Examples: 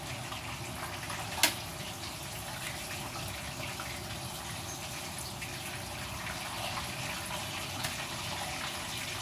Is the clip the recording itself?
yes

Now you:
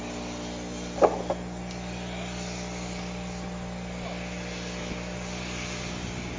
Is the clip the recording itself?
yes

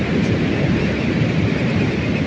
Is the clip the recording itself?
no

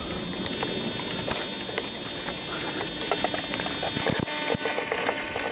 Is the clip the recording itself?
yes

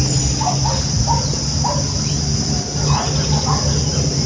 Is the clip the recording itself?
yes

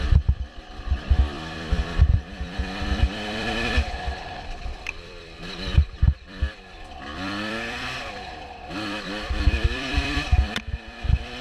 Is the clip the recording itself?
no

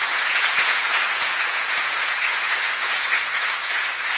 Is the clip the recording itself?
no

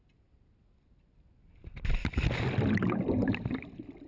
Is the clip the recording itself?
yes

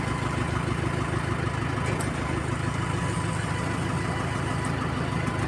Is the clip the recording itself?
yes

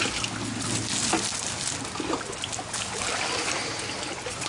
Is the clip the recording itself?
yes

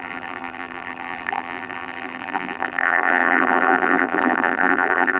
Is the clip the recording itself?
no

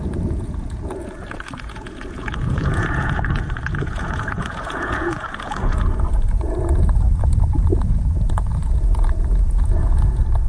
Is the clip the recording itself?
no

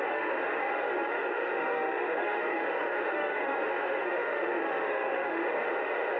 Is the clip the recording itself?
no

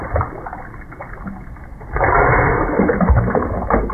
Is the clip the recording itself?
yes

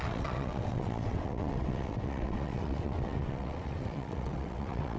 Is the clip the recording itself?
no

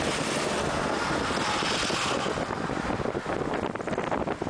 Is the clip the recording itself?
yes